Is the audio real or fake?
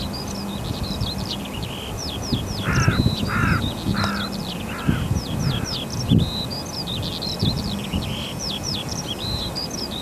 real